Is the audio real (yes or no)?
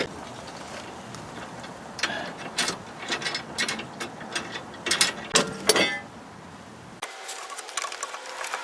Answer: yes